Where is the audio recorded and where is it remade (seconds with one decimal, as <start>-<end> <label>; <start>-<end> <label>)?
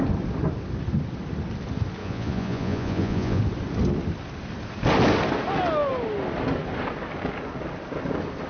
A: 0.0-2.0 recorded; 2.0-3.4 remade; 3.4-8.5 recorded